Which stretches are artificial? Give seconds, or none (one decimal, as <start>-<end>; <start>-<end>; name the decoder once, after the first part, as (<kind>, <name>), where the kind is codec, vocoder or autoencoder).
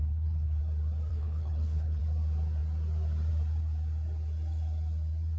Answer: 0.0-0.6 (codec, HILCodec); 1.1-2.0